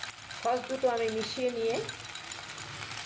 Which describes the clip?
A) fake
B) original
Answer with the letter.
B